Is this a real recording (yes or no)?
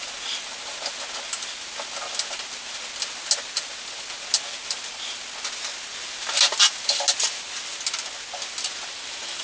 yes